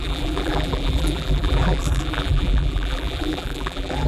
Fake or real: fake